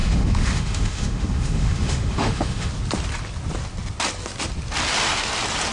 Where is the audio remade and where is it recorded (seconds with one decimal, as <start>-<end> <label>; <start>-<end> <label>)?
0.0-2.7 remade; 2.7-5.7 recorded